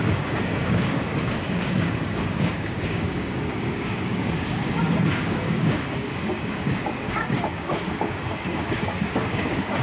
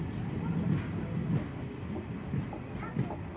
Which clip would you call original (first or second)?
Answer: second